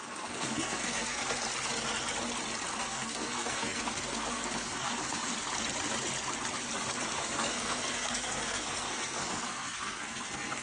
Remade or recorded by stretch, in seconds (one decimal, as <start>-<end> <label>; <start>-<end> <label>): 0.0-1.2 remade; 1.2-2.8 recorded; 2.8-5.3 remade; 5.3-7.1 recorded; 7.1-10.6 remade